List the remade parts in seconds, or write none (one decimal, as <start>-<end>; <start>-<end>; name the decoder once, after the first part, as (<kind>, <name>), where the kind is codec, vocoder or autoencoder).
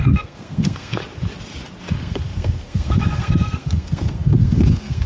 0.0-1.0 (codec, SNAC); 1.9-5.1